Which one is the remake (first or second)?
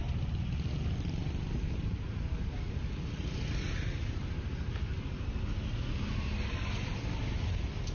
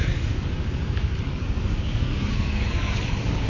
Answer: second